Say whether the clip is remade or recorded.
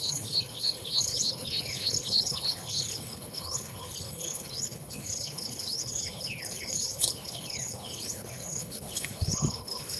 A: remade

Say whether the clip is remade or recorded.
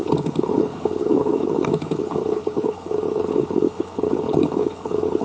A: remade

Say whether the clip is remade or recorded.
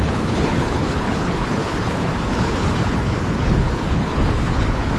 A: remade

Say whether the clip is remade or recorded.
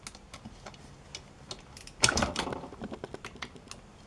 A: recorded